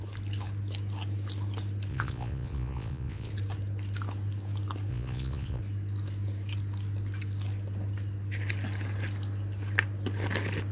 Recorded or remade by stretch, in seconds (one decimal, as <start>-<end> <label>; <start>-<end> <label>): 0.0-1.9 recorded; 1.9-3.3 remade; 3.3-4.9 recorded; 4.9-5.6 remade; 5.6-10.7 recorded